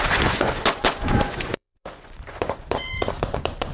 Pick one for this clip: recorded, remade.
remade